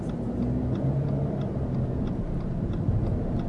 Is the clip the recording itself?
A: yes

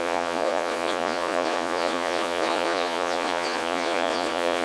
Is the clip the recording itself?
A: no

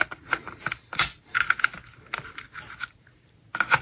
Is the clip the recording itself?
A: yes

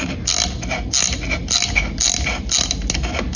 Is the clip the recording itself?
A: yes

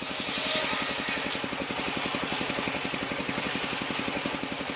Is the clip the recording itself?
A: yes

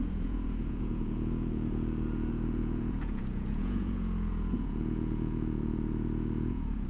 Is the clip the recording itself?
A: no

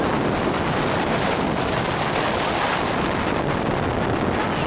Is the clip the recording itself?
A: yes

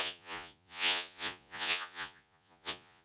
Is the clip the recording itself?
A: no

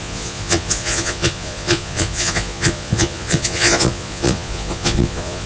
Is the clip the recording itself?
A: no